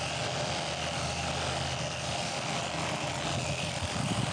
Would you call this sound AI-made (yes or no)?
no